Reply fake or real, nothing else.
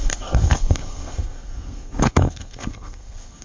fake